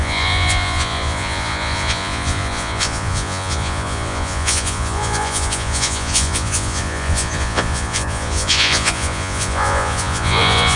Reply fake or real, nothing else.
fake